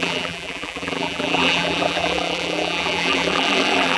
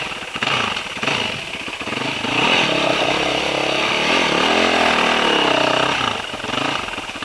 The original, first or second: second